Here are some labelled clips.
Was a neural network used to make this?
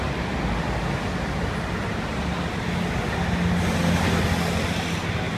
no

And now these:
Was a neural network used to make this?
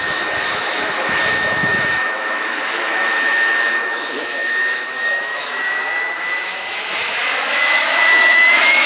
yes